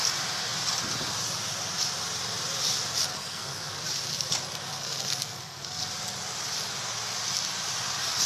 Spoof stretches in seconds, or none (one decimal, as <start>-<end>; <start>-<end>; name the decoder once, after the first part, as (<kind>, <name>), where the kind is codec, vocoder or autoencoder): 3.1-3.8 (codec, SNAC); 4.7-5.8